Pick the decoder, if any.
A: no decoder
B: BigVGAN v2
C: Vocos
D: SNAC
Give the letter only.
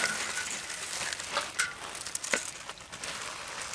A